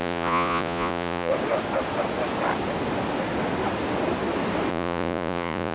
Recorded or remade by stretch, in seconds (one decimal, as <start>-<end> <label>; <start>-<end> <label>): 0.0-1.3 remade; 1.3-4.7 recorded; 4.7-5.7 remade